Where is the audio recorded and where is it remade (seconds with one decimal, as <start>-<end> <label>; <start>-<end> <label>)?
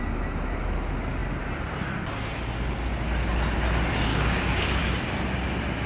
0.0-4.1 recorded; 4.1-4.8 remade; 4.8-5.9 recorded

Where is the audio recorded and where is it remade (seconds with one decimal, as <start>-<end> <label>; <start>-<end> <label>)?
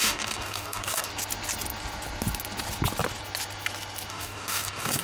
0.0-1.1 remade; 1.1-4.1 recorded; 4.1-5.0 remade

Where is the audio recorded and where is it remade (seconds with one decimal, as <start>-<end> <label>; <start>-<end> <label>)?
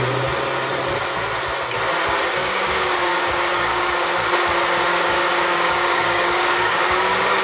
0.0-2.4 recorded; 2.4-4.1 remade; 4.1-4.9 recorded; 4.9-7.4 remade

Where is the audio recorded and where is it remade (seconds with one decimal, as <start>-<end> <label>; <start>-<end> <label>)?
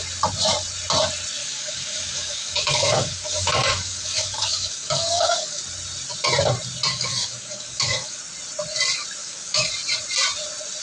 0.0-1.4 recorded; 1.4-5.6 remade; 5.6-6.9 recorded; 6.9-8.2 remade; 8.2-9.2 recorded; 9.2-9.7 remade; 9.7-10.8 recorded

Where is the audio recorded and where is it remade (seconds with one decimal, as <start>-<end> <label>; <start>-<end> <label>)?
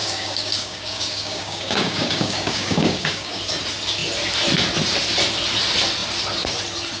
0.0-3.4 remade; 3.4-7.0 recorded